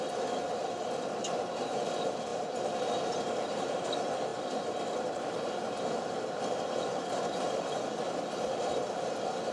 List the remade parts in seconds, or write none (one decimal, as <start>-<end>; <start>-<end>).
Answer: 1.2-1.8; 2.3-3.9; 4.3-7.6